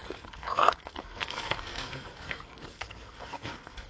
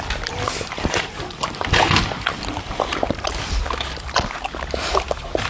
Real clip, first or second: second